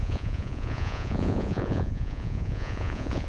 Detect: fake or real fake